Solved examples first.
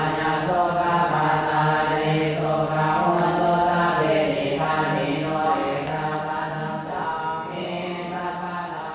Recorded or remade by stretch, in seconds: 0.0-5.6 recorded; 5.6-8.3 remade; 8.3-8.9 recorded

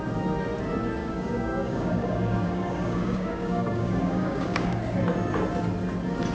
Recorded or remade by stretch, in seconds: 0.0-1.0 recorded; 1.0-4.8 remade; 4.8-6.3 recorded